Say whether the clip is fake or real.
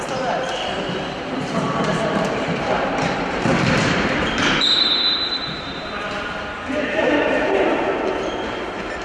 fake